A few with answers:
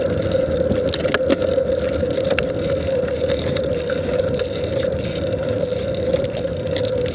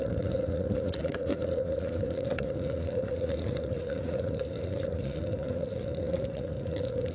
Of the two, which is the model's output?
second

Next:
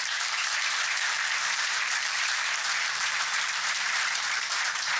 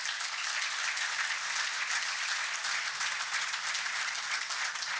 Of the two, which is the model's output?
first